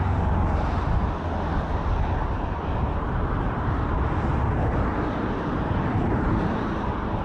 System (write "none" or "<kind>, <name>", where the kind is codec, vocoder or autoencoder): none